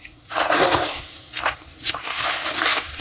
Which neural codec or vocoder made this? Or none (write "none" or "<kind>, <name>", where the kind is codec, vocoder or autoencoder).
codec, SNAC